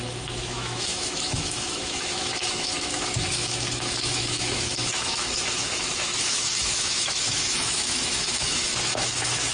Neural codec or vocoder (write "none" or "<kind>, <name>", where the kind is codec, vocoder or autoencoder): autoencoder, DAC-VAE